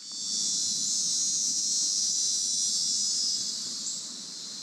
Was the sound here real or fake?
real